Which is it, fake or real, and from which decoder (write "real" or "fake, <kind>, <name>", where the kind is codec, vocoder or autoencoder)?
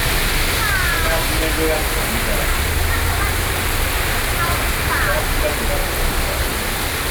real